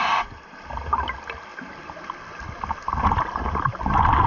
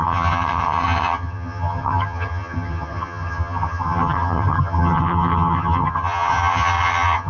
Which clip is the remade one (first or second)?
second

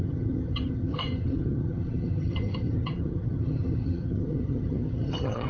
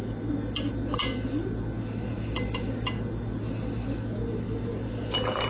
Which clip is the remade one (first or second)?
first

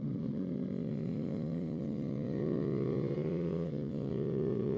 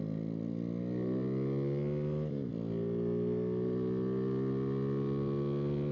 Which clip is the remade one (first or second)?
first